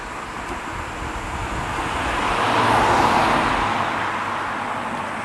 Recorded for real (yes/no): yes